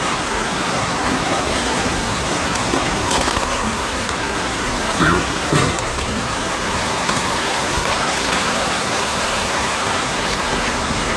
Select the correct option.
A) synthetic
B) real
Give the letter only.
A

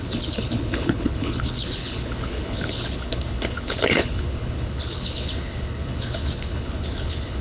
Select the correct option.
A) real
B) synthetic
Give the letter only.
B